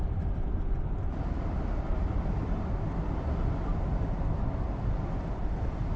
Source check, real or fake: real